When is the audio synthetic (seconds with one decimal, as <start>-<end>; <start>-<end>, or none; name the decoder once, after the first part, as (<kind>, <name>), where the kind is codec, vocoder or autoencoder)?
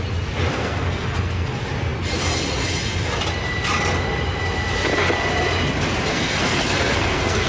0.5-1.5 (codec, SNAC); 6.1-7.5